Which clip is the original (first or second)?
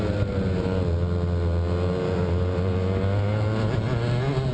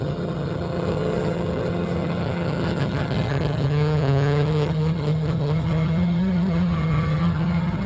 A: first